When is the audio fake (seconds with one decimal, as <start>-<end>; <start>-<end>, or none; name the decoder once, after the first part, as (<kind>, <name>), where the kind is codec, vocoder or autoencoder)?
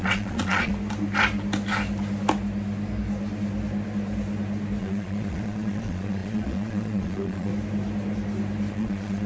0.0-0.7 (vocoder, Vocos); 4.8-7.5; 8.7-9.3